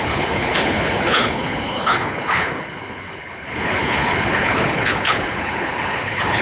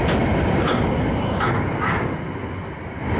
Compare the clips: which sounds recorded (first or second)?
second